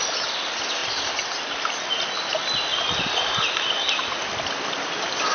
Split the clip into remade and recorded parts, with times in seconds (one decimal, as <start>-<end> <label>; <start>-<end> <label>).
0.0-5.3 recorded